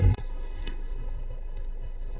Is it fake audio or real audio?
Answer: fake